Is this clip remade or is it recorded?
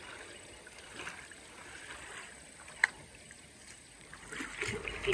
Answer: recorded